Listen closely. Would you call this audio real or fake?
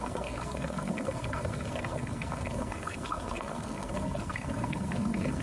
fake